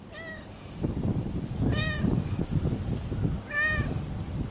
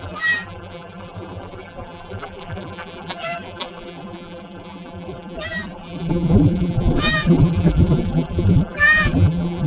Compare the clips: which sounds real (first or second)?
first